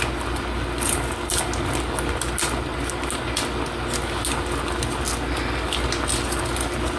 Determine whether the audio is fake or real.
real